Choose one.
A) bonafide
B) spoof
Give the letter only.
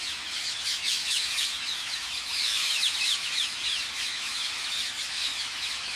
B